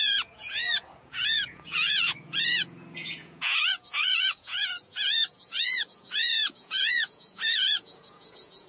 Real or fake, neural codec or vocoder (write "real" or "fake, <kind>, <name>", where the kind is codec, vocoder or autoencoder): fake, vocoder, Vocos